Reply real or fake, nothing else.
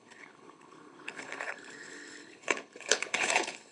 fake